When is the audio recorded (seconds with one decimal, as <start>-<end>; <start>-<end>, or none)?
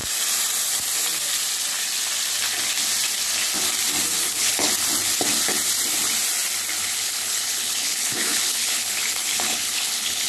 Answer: 0.0-4.2; 4.7-6.8